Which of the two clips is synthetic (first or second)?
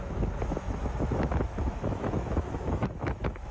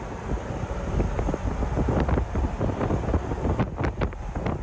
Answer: first